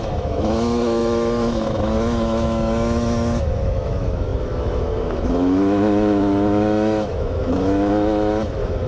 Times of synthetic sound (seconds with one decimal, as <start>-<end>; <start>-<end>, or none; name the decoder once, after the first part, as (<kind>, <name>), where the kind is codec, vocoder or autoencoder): 0.0-8.9 (autoencoder, DAC-VAE)